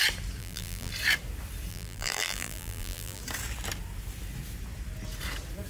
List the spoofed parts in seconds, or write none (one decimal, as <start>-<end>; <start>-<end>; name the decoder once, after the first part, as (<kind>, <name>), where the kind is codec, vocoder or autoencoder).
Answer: 0.4-0.9 (vocoder, BigVGAN v2); 1.7-3.2